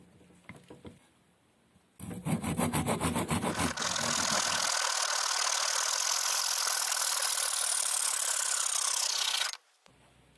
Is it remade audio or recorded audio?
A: recorded